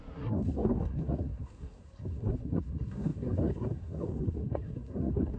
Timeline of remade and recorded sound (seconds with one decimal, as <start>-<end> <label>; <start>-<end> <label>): 0.0-5.4 remade